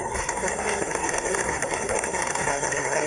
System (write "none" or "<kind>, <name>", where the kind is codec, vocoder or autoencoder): codec, SNAC